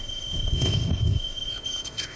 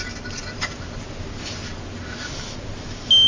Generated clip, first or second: first